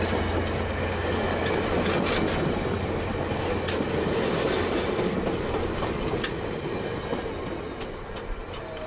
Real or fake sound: real